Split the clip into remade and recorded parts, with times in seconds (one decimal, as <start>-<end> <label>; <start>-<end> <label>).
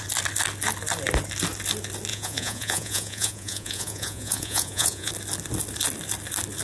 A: 0.0-2.1 recorded; 2.1-5.1 remade; 5.1-6.6 recorded